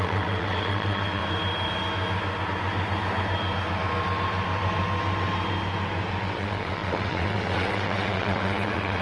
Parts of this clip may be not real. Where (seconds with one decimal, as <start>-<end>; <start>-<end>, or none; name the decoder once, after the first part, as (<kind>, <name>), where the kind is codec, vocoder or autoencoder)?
0.0-1.2 (vocoder, WaveNeXt); 6.2-9.0